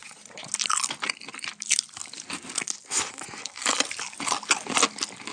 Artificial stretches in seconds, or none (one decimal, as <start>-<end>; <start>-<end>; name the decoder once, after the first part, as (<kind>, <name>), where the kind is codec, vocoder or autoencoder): 0.0-0.5 (vocoder, Vocos)